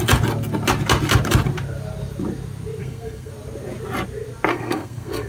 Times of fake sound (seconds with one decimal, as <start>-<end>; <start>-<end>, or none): 2.8-3.3; 4.5-5.3

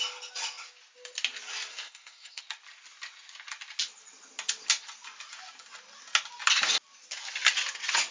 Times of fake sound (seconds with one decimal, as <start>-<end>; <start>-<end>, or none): 1.7-2.4

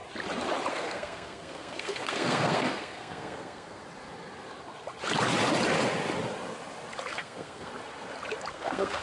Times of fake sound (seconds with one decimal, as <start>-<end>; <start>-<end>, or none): 0.7-3.8; 7.1-7.7; 8.5-9.0

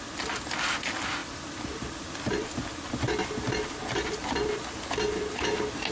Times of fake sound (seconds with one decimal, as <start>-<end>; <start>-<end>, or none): none

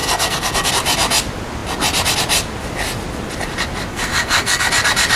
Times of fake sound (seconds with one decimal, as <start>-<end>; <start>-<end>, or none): 0.0-0.7; 3.9-4.7

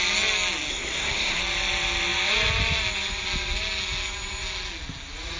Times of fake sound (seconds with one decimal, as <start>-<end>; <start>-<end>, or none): 0.7-1.4

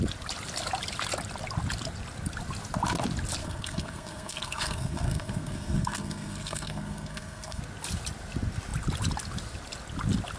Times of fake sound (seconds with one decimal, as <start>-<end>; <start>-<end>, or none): 3.4-7.6